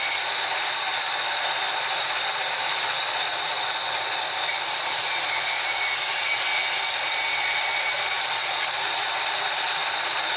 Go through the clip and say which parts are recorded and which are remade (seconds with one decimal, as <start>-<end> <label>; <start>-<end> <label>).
0.0-10.4 recorded